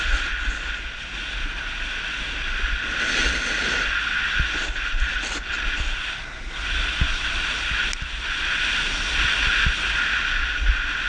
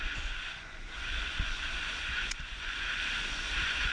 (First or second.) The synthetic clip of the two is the second